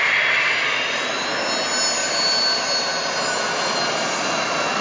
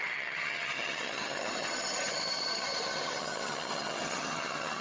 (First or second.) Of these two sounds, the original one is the first